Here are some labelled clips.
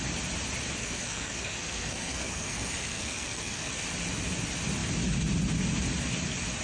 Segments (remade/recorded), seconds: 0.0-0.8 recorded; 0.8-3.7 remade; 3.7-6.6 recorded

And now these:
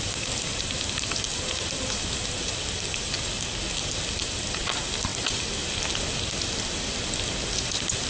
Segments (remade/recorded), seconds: 0.0-8.1 recorded

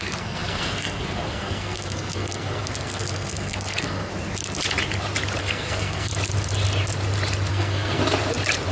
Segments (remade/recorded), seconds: 0.0-4.1 remade; 4.1-5.4 recorded; 5.4-6.1 remade; 6.1-7.5 recorded; 7.5-8.0 remade; 8.0-8.7 recorded

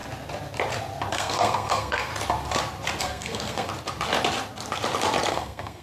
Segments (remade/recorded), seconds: 0.0-1.1 recorded; 1.1-2.1 remade; 2.1-3.0 recorded; 3.0-3.7 remade; 3.7-5.3 recorded; 5.3-5.8 remade

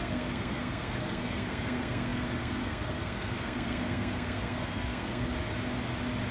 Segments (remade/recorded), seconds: 0.0-5.3 remade; 5.3-6.3 recorded

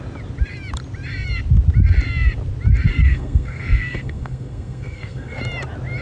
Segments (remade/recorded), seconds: 0.0-2.9 recorded; 2.9-5.4 remade; 5.4-6.0 recorded

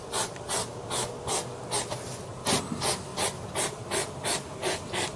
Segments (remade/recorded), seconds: 0.0-5.2 recorded

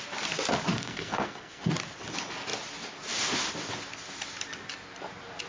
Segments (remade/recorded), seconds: 0.0-0.7 recorded; 0.7-1.7 remade; 1.7-5.5 recorded